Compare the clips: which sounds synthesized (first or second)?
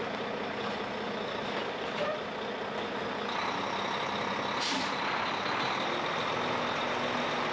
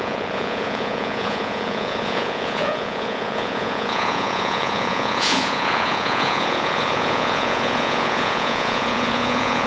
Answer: second